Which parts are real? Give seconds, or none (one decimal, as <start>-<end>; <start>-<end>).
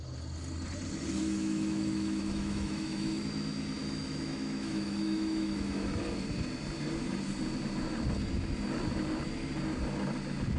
0.0-1.2; 3.2-3.8; 6.0-10.6